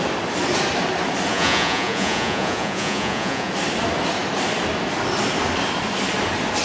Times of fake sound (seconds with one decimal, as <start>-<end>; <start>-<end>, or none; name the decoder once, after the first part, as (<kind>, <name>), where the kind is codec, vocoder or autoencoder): 1.3-3.5 (vocoder, Vocos)